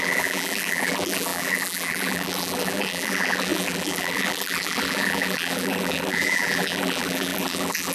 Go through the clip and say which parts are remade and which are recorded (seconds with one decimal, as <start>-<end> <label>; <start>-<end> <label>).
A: 0.0-7.9 remade